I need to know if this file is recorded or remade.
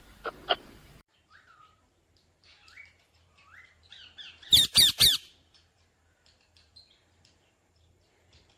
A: remade